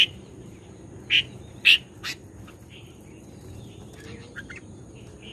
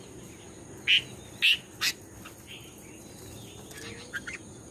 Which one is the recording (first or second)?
second